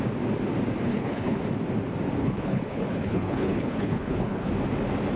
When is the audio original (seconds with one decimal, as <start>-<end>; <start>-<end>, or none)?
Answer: 0.0-0.9; 1.4-2.2; 4.5-5.2